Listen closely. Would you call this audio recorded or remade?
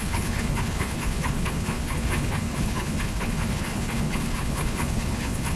remade